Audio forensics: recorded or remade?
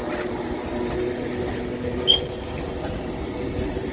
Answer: recorded